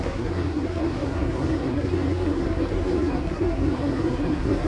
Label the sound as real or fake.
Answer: fake